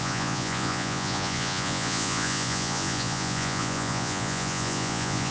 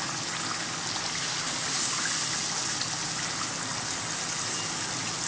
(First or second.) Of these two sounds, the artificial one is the first